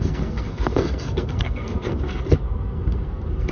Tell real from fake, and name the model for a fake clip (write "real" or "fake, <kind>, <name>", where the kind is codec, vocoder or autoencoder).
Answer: fake, codec, SNAC